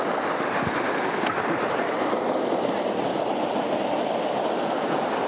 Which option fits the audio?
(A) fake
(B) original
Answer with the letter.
B